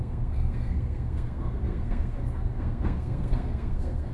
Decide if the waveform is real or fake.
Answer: fake